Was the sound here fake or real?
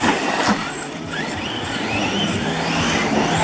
real